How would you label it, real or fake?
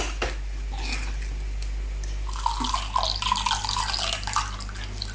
real